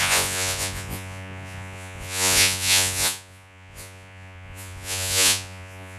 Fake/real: fake